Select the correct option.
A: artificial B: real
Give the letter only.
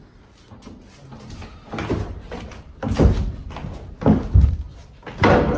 B